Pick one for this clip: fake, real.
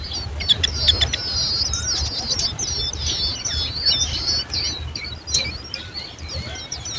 real